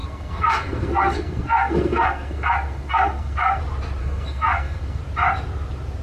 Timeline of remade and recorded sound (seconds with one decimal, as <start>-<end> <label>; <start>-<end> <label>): 0.0-3.6 remade; 3.6-4.0 recorded; 4.0-5.0 remade; 5.0-6.0 recorded